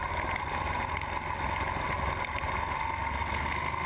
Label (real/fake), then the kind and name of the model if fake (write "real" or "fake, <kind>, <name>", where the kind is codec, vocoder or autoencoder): real